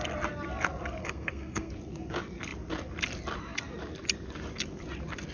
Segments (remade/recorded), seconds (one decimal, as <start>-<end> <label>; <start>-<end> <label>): 0.0-1.0 recorded; 1.0-1.7 remade; 1.7-5.3 recorded